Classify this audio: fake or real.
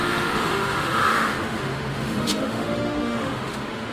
fake